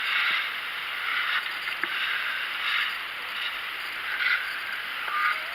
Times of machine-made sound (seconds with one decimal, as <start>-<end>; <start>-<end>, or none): 1.1-3.5